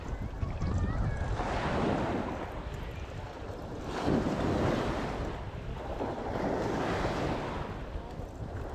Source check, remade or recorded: recorded